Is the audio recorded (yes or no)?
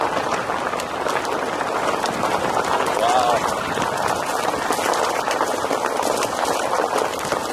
yes